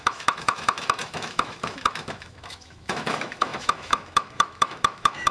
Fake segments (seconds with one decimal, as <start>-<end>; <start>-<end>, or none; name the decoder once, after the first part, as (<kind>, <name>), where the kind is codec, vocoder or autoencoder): 0.0-5.3 (autoencoder, DAC-VAE)